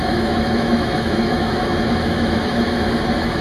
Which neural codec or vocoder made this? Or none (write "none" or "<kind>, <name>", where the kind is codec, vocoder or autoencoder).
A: autoencoder, DAC-VAE